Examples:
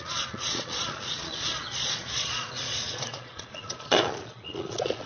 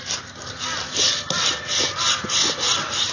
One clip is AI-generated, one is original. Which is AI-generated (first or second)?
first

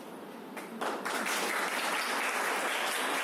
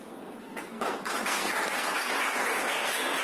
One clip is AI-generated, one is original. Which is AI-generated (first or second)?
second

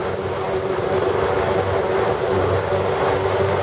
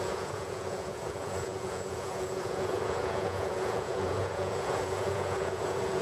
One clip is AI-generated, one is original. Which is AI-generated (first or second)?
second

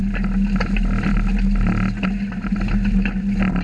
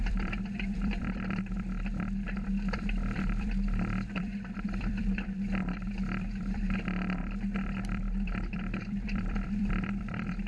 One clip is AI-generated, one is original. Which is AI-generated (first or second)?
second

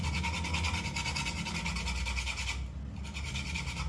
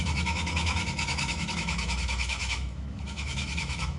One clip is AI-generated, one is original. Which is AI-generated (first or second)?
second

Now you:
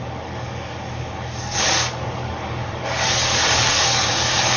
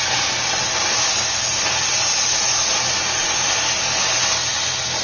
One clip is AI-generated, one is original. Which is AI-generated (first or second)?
first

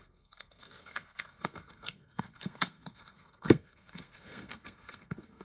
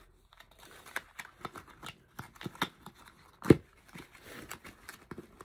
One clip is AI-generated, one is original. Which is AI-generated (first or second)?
first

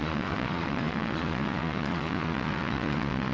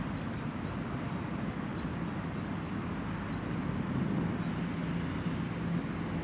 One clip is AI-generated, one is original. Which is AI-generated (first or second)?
first